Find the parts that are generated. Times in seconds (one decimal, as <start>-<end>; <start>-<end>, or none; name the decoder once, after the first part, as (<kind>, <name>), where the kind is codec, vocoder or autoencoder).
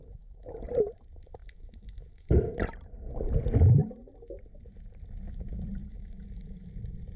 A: 0.0-0.6 (autoencoder, DAC-VAE); 1.4-2.5; 5.8-6.7